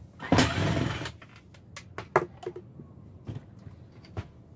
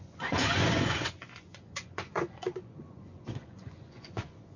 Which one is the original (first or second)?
first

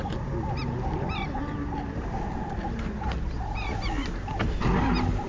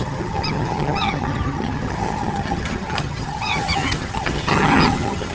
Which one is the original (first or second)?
first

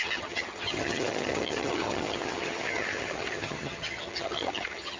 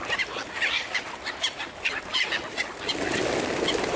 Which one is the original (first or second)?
second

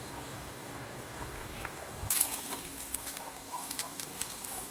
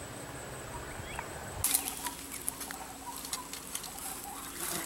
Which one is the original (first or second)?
second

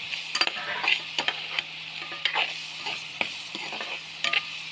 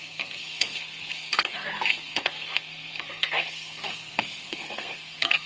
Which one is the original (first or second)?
first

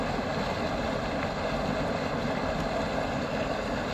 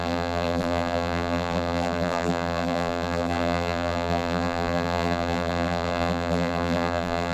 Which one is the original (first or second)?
first